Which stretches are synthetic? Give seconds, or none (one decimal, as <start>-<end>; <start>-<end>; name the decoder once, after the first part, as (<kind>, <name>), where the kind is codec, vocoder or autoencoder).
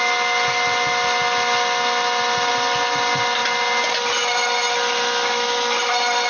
none